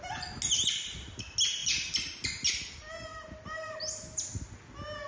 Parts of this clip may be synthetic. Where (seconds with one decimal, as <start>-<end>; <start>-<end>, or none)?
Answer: none

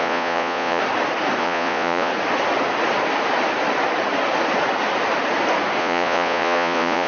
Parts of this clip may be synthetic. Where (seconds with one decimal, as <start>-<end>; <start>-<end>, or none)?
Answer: 0.0-0.8; 1.4-2.1; 5.8-7.1

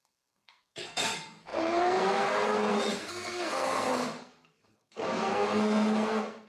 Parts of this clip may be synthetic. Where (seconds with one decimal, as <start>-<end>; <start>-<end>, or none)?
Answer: 0.0-6.5

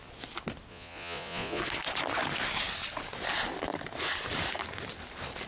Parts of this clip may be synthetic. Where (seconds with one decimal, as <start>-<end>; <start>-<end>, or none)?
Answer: 0.7-1.6

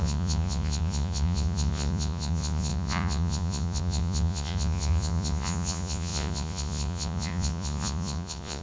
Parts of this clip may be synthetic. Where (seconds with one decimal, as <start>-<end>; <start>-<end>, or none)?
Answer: 0.0-8.6